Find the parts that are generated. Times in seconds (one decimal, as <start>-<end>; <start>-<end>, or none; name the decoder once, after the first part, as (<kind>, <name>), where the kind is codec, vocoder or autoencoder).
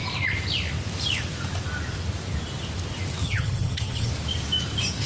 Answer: 3.2-4.1 (vocoder, HiFi-GAN)